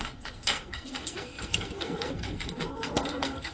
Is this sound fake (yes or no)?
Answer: yes